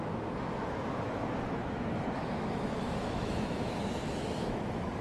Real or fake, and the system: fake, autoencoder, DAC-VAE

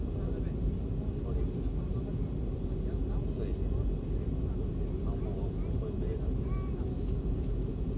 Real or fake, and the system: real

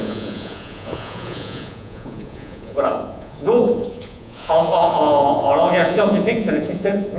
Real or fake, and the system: fake, vocoder, Vocos